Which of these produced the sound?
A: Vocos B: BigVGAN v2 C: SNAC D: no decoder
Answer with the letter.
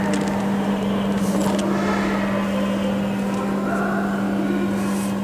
D